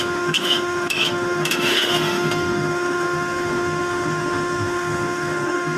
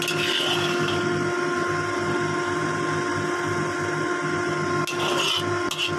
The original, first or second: second